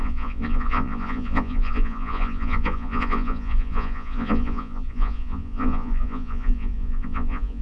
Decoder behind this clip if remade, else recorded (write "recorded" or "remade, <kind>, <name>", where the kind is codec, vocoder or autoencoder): remade, vocoder, Vocos